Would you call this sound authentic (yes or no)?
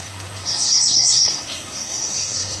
no